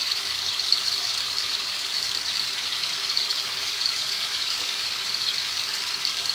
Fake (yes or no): yes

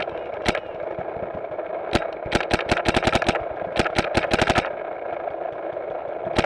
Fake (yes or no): no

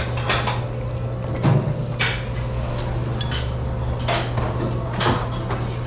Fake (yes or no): no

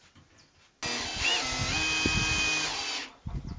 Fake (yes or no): no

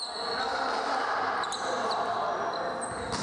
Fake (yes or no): no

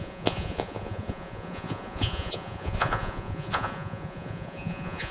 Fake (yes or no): yes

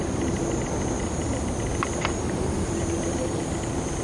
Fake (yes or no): no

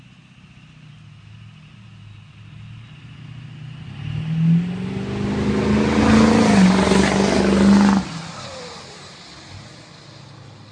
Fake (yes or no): no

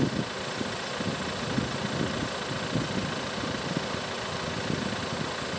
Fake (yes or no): no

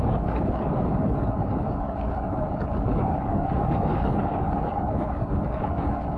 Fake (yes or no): yes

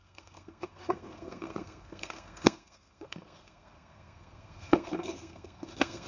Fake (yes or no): yes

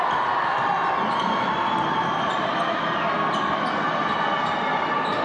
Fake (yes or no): no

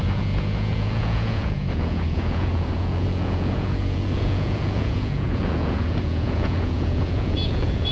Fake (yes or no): yes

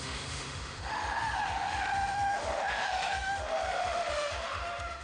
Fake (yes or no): yes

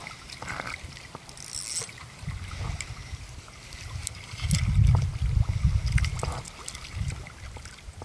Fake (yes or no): no